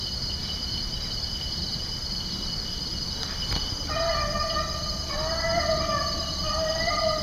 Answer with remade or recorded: recorded